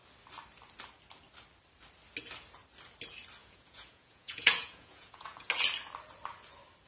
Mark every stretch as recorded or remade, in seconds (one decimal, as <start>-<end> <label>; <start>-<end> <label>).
0.0-3.4 recorded; 3.4-5.5 remade; 5.5-6.9 recorded